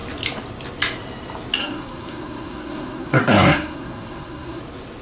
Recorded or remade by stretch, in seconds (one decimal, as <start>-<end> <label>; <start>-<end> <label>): 0.0-1.6 recorded; 1.6-4.6 remade; 4.6-5.0 recorded